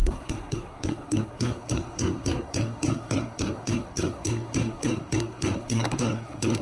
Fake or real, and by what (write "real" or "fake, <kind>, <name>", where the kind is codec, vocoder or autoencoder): fake, codec, SNAC